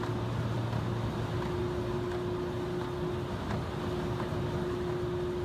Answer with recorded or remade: recorded